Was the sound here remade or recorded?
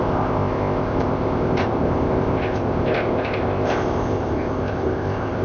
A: remade